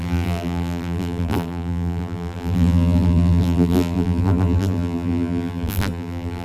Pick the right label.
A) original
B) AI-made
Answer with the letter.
B